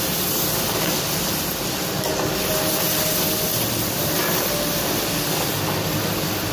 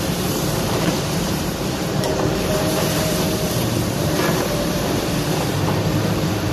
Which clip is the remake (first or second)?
second